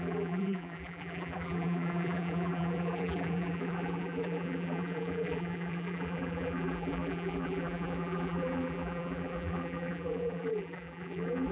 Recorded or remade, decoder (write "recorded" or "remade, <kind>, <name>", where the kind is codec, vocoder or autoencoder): remade, vocoder, BigVGAN v2